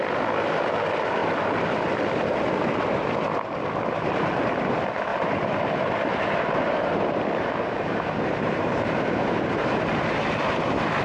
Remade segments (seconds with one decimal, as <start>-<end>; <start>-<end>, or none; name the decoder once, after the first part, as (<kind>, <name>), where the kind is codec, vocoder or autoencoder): 5.1-5.6 (vocoder, BigVGAN v2); 6.1-11.0